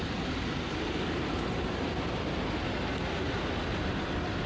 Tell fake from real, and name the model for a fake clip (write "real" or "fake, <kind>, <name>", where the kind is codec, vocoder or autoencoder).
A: real